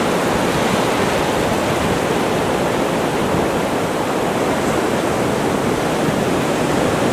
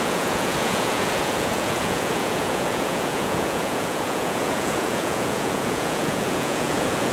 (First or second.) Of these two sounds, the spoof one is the second